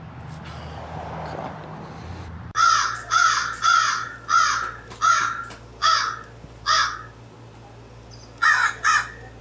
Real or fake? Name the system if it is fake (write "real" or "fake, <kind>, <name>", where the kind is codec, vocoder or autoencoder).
real